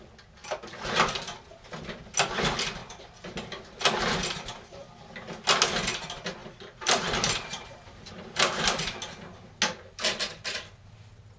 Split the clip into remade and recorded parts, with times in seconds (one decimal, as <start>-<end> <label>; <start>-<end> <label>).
0.0-2.8 recorded; 2.8-3.8 remade; 3.8-4.2 recorded; 4.2-4.8 remade; 4.8-6.4 recorded; 6.4-8.1 remade; 8.1-11.4 recorded